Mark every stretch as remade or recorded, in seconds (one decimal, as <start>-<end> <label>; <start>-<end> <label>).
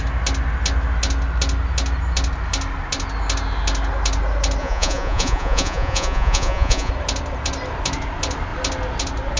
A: 0.0-4.6 recorded; 4.6-6.9 remade; 6.9-9.4 recorded